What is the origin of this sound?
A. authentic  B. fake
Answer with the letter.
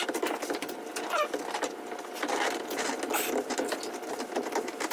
A